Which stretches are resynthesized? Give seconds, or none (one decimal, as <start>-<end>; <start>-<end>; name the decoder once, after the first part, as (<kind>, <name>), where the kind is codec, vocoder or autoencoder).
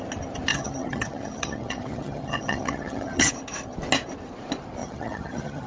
0.5-3.3 (vocoder, HiFi-GAN); 4.8-5.7